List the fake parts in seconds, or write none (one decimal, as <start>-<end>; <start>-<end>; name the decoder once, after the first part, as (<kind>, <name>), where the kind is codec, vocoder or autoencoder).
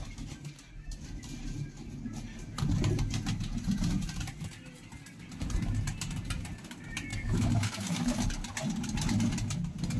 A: 7.1-8.3 (codec, DAC)